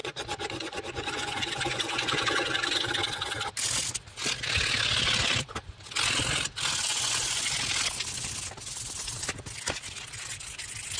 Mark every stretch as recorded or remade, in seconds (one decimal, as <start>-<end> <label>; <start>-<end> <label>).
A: 0.0-2.9 remade; 2.9-6.9 recorded; 6.9-7.5 remade; 7.5-11.0 recorded